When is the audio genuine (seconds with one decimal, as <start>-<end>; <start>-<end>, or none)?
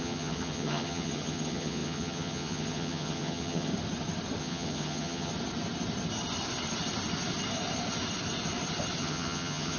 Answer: 3.7-4.4; 5.3-9.0